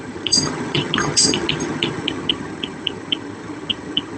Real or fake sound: fake